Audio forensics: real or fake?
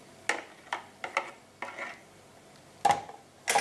real